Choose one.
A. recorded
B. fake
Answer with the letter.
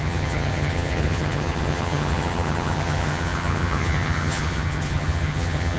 B